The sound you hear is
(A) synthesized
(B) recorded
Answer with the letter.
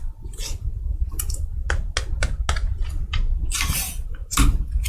B